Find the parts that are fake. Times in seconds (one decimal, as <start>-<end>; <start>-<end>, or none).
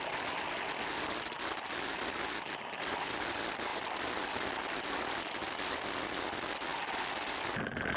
none